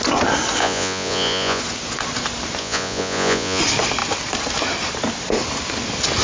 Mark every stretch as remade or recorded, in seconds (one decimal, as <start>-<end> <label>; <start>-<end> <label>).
0.0-0.6 recorded; 0.6-1.6 remade; 1.6-2.6 recorded; 2.6-3.6 remade; 3.6-6.2 recorded